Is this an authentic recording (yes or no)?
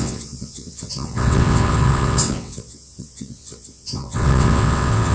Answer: no